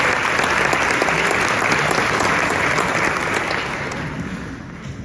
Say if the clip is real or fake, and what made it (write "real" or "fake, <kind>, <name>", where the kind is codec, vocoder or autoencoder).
real